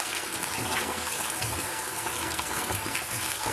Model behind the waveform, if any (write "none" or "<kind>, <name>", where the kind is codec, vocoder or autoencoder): codec, SNAC